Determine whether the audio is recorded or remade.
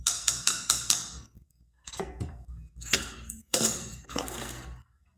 remade